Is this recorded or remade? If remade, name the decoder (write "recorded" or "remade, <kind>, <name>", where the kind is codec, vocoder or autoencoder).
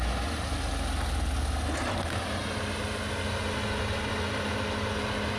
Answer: recorded